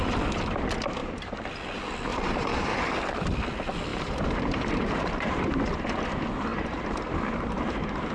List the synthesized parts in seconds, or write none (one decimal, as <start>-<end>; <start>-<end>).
1.0-1.5; 2.1-2.7; 3.9-5.6; 6.5-8.1